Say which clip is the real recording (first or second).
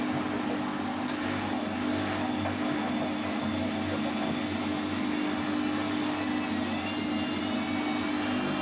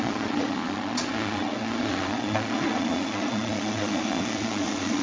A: first